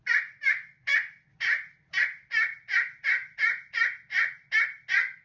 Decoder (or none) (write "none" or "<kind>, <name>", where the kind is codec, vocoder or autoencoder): none